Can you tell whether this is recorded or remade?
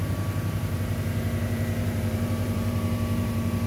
remade